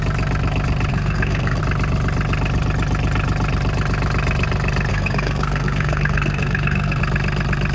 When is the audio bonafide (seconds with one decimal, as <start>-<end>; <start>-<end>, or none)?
0.0-0.9; 1.6-4.9; 7.0-7.7